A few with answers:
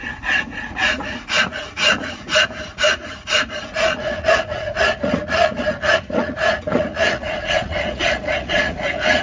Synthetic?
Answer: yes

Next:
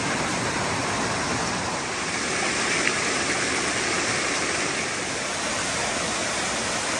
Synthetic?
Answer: no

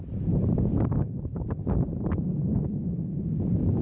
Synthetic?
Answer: yes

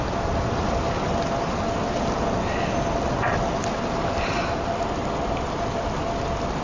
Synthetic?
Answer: no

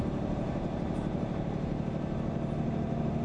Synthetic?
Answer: yes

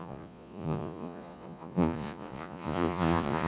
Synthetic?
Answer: yes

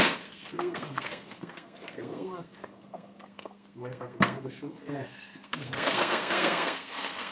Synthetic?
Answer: yes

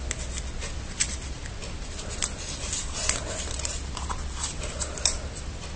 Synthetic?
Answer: no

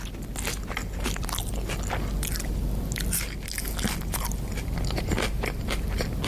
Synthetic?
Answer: no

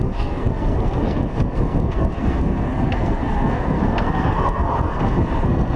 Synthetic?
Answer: yes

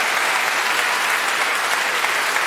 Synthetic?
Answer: no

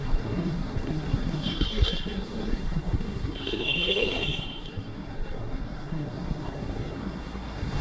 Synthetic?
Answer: yes